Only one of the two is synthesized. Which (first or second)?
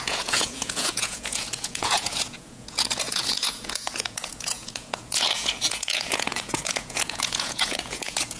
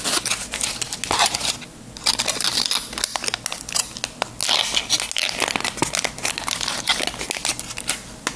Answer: first